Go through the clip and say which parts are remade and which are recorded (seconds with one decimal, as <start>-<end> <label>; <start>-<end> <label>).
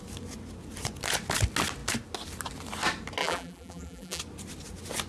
0.0-3.2 recorded; 3.2-4.2 remade; 4.2-5.1 recorded